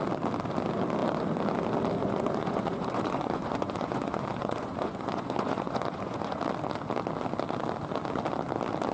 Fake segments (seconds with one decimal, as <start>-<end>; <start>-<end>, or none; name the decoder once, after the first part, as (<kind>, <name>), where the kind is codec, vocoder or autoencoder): 2.0-6.4 (vocoder, Vocos)